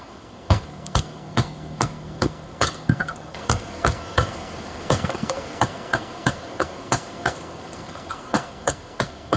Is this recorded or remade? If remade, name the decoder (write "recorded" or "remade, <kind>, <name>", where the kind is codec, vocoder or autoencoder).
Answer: remade, codec, SNAC